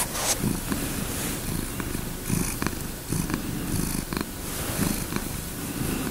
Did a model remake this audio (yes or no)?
no